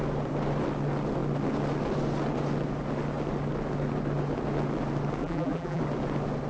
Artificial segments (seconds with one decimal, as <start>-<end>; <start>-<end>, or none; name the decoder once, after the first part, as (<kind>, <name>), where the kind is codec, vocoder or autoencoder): 5.2-5.8 (vocoder, BigVGAN v2)